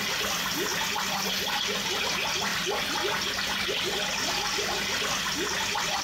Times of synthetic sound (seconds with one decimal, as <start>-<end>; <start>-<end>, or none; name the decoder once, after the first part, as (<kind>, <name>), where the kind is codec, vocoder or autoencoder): none